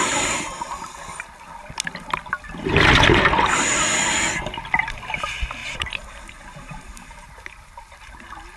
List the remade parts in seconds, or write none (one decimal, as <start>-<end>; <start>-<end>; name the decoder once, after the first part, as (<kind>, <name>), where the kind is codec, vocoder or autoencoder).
5.6-7.8 (vocoder, BigVGAN v2)